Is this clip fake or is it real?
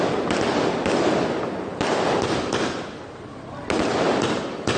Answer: real